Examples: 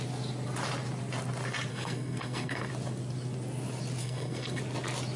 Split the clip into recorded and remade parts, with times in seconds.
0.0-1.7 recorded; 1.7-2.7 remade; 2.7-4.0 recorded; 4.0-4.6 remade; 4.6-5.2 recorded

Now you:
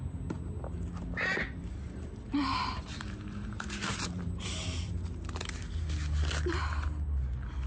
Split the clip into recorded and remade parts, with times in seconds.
0.0-1.6 recorded; 1.6-5.3 remade; 5.3-7.7 recorded

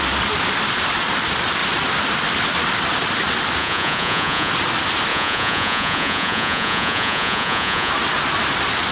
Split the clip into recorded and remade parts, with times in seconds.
0.0-3.6 recorded; 3.6-4.5 remade; 4.5-5.1 recorded; 5.1-7.9 remade; 7.9-8.9 recorded

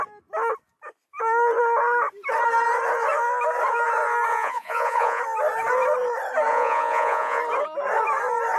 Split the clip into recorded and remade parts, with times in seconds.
0.0-4.3 recorded; 4.3-5.2 remade; 5.2-6.5 recorded; 6.5-7.4 remade; 7.4-8.6 recorded

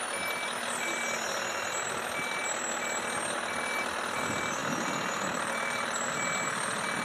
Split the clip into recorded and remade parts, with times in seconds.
0.0-4.6 recorded; 4.6-6.1 remade; 6.1-7.0 recorded

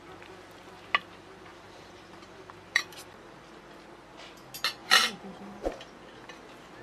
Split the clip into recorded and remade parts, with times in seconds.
0.0-1.5 recorded; 1.5-3.8 remade; 3.8-4.8 recorded; 4.8-5.6 remade; 5.6-6.8 recorded

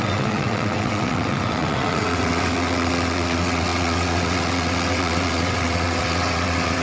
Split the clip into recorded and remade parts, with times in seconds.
0.0-6.8 remade